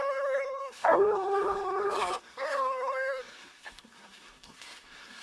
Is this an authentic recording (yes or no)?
no